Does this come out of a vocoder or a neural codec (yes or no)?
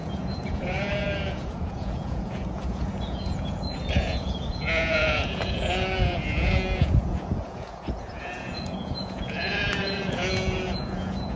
yes